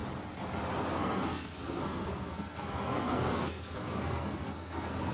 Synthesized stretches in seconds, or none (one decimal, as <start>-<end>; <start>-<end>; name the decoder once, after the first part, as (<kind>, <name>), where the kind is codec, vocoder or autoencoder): 0.9-5.1 (codec, SNAC)